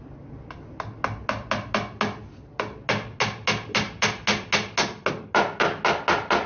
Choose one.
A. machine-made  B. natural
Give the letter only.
B